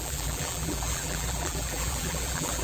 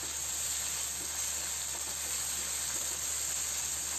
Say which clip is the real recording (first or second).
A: second